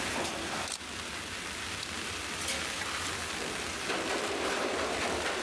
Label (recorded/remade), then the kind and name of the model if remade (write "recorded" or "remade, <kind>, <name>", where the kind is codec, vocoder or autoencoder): remade, vocoder, BigVGAN v2